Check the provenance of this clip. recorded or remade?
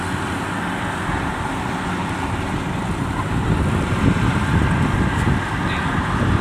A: recorded